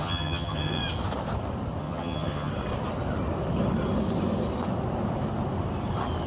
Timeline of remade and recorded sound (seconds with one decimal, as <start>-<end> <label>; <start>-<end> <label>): 0.0-0.8 remade; 0.8-1.8 recorded; 1.8-2.5 remade; 2.5-6.3 recorded